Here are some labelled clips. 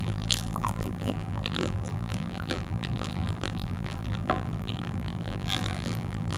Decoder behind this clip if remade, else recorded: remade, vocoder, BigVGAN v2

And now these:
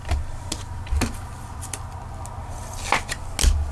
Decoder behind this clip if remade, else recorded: recorded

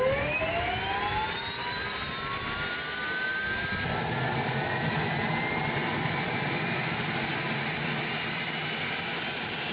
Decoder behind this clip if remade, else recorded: recorded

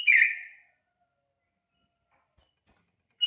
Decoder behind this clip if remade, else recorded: remade, vocoder, BigVGAN v2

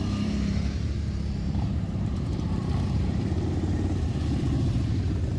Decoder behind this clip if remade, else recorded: remade, vocoder, BigVGAN v2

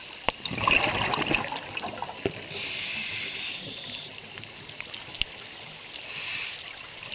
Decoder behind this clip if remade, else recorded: recorded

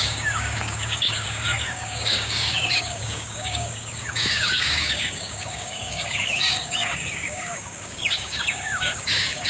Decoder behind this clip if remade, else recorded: remade, codec, DAC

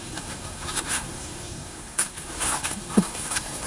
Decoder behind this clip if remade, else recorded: remade, codec, SNAC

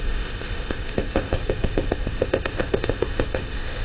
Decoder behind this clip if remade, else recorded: remade, codec, ZipCodec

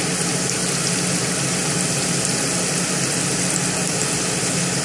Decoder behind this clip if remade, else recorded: recorded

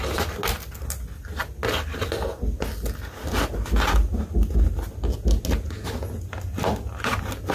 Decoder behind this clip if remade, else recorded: recorded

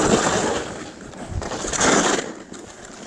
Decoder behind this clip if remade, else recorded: recorded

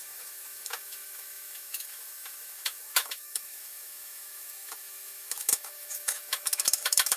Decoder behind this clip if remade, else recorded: remade, autoencoder, DAC-VAE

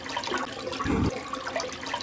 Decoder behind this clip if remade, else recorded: recorded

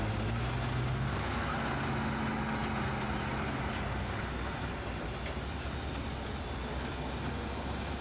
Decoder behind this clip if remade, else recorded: recorded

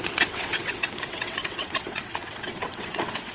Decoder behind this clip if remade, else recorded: remade, vocoder, WaveNeXt